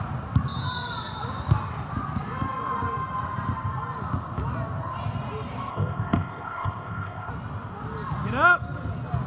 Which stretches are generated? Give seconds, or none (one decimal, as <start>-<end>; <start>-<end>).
5.7-7.3